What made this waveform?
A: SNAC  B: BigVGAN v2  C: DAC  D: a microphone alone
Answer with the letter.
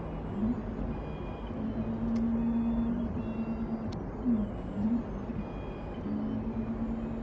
D